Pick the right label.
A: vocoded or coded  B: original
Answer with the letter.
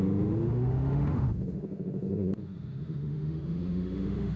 A